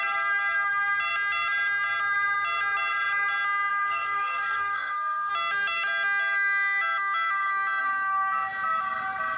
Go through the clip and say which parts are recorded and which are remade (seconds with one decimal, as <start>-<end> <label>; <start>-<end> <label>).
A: 0.0-3.7 recorded; 3.7-5.3 remade; 5.3-7.8 recorded; 7.8-8.5 remade; 8.5-9.4 recorded

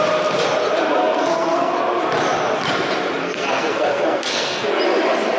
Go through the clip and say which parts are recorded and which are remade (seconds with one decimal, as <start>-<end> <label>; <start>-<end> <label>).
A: 0.0-1.0 recorded; 1.0-1.7 remade; 1.7-3.2 recorded; 3.2-4.7 remade; 4.7-5.4 recorded